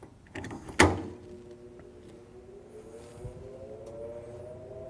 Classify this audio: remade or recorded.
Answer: recorded